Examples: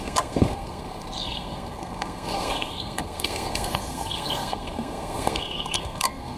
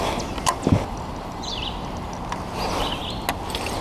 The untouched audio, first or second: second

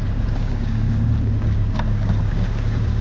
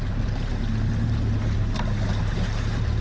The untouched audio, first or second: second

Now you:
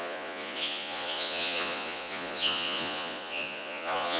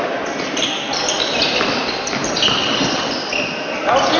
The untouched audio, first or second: second